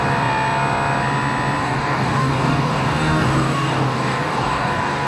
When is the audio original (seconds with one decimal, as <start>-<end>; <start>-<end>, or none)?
0.0-1.6